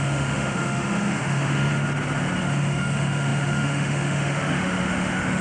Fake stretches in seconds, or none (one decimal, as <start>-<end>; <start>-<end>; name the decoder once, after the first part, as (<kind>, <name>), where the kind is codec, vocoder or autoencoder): 0.0-1.7 (autoencoder, DAC-VAE); 2.4-5.4